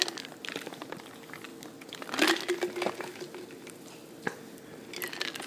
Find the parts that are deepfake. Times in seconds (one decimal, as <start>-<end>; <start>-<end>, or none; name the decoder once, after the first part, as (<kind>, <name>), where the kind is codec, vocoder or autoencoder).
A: none